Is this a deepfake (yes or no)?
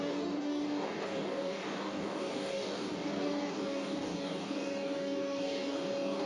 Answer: yes